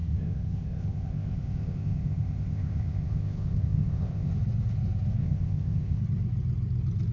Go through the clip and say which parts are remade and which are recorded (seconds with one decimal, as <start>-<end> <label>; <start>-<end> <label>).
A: 0.0-4.3 remade; 4.3-5.2 recorded; 5.2-6.0 remade; 6.0-7.1 recorded